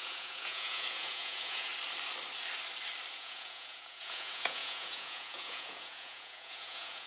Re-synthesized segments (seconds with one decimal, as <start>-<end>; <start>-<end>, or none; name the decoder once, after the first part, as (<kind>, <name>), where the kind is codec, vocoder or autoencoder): 0.0-1.7 (vocoder, Vocos); 3.1-7.1